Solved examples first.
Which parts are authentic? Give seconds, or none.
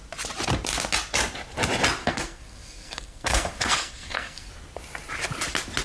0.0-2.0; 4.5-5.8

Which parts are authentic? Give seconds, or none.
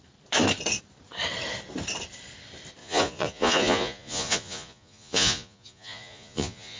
0.0-2.8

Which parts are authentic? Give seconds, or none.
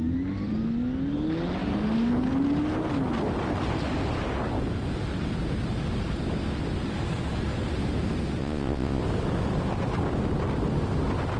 0.0-8.4; 9.0-11.4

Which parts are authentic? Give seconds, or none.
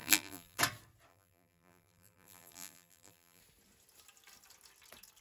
0.6-1.1; 3.4-5.2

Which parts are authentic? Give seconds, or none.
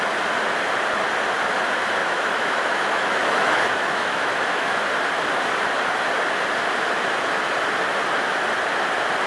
0.0-2.0; 4.8-9.3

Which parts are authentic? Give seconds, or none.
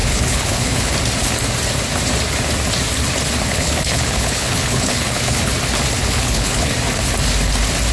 0.9-3.5; 5.5-6.0; 6.7-7.9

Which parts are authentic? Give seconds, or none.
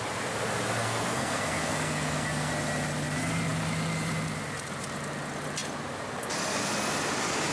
0.0-0.8; 2.5-7.5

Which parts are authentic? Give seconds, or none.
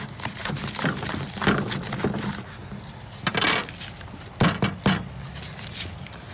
0.0-0.4; 1.1-6.3